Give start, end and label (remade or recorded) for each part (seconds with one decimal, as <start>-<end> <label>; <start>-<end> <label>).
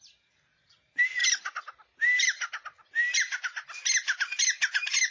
0.0-5.1 recorded